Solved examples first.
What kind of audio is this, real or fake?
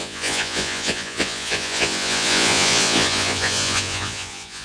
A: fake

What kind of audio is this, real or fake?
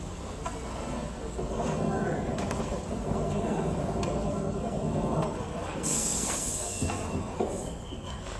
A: fake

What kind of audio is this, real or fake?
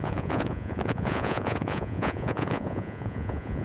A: fake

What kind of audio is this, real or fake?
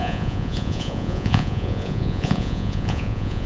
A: fake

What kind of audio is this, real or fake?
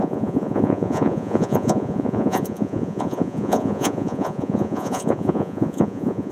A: fake